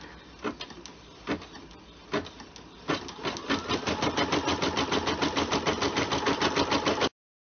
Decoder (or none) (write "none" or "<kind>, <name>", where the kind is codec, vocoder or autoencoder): none